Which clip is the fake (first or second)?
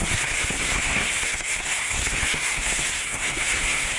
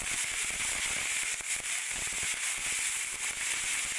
first